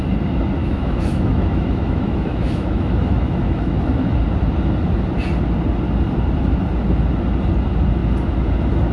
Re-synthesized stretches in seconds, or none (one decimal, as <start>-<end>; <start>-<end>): 0.6-4.2